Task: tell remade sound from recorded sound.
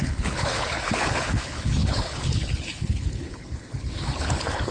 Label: remade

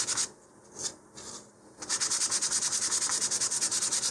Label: recorded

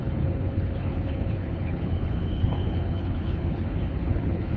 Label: remade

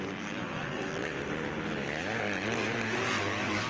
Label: recorded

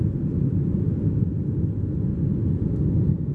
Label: recorded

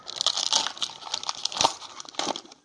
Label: recorded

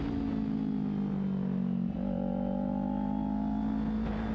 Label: recorded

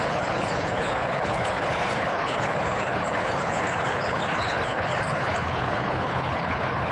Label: remade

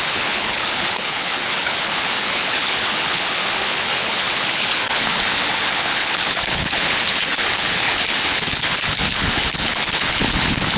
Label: remade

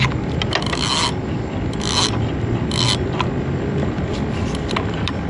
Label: recorded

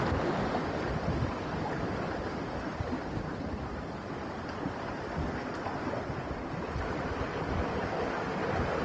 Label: recorded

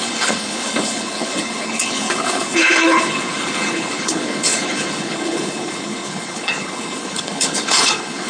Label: remade